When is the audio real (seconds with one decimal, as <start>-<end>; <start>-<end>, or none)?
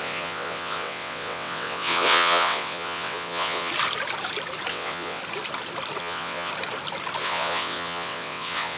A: 3.7-4.7; 5.2-6.0; 6.5-7.2